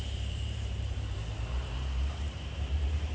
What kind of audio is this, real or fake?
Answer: fake